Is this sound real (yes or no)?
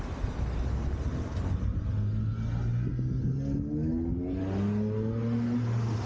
yes